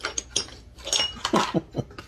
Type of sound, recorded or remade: recorded